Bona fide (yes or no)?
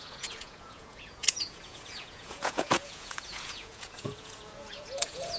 no